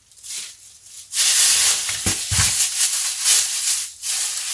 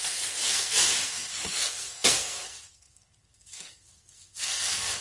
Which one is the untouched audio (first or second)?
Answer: first